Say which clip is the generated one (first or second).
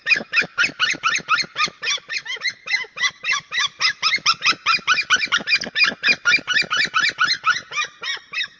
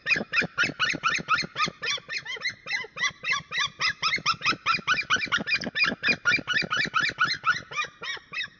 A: second